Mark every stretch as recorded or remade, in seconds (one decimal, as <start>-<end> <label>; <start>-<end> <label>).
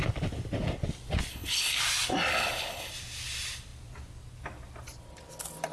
0.0-1.3 recorded; 1.3-1.8 remade; 1.8-2.3 recorded; 2.3-2.9 remade; 2.9-5.7 recorded